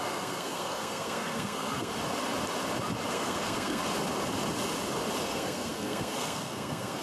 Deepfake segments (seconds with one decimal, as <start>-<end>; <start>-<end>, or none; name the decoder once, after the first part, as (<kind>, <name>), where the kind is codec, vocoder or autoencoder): 0.0-1.9 (codec, SNAC); 3.1-3.8; 5.2-7.0